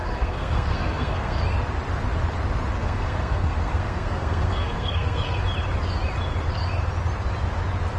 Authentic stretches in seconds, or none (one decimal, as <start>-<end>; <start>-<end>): 1.4-2.8; 5.4-8.0